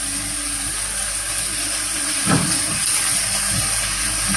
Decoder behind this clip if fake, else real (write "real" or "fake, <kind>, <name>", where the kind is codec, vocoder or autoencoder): real